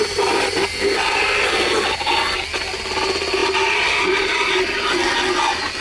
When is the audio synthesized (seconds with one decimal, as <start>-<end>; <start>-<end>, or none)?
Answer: none